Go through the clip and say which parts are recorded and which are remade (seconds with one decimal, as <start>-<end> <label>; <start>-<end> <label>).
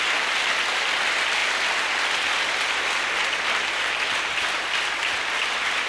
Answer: 0.0-5.9 recorded